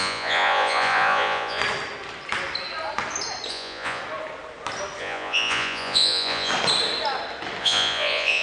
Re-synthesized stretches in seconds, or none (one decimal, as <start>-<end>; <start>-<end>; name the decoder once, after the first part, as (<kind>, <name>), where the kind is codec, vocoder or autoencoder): 0.0-1.6 (vocoder, Vocos); 3.5-4.0; 5.0-6.5; 7.6-8.4